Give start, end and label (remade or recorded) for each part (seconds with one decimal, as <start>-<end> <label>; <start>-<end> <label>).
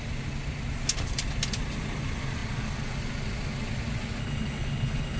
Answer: 0.0-4.2 recorded; 4.2-5.2 remade